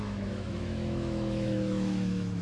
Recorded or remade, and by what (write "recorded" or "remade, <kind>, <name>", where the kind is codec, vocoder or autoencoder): remade, autoencoder, DAC-VAE